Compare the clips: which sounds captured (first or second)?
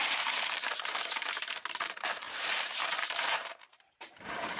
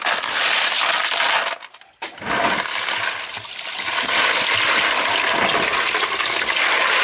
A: second